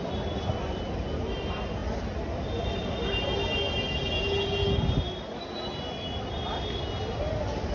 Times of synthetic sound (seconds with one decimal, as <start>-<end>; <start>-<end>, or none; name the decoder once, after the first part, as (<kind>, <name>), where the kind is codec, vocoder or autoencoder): none